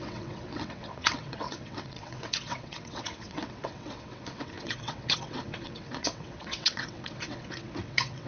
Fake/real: fake